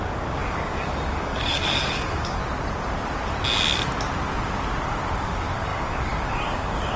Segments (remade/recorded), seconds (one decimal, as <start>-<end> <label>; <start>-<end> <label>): 0.0-2.4 remade; 2.4-5.2 recorded; 5.2-7.0 remade